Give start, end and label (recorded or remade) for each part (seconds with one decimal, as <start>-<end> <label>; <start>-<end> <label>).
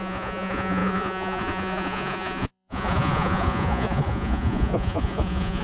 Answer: 0.0-5.6 remade